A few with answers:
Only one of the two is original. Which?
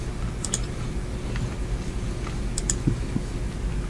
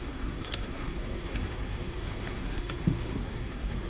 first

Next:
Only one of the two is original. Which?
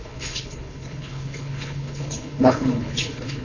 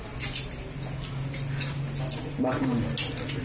second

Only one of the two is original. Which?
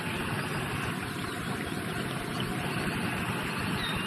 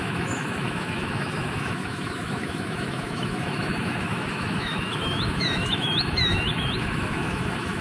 first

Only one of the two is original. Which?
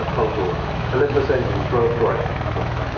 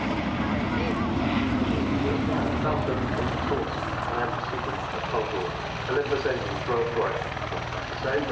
second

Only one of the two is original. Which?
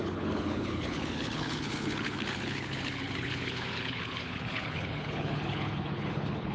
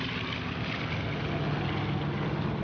second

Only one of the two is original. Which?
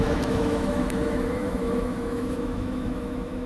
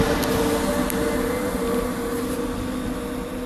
second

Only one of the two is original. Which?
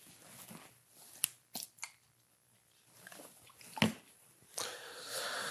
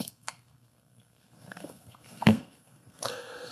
first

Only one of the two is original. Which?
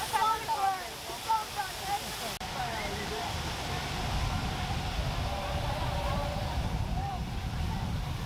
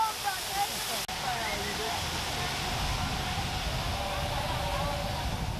second